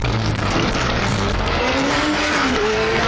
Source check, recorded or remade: remade